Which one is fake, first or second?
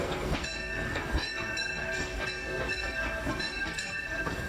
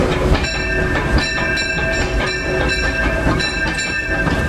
first